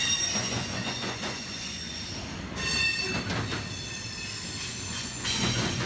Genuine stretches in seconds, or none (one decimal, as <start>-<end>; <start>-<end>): 0.0-0.4; 2.0-4.9